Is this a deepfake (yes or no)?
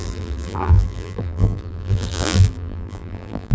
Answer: yes